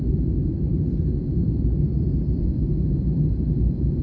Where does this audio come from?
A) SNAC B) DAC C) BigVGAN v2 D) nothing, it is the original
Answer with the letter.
C